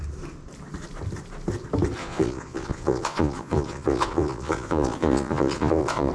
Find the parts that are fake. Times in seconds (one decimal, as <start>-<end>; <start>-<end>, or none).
2.0-6.1